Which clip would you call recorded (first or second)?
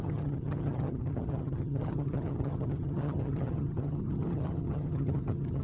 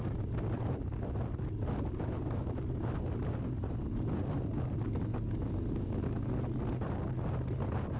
second